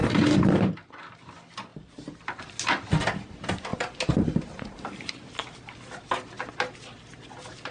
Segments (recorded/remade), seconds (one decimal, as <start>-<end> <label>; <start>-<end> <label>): 0.0-0.7 remade; 0.7-3.7 recorded; 3.7-5.1 remade; 5.1-7.7 recorded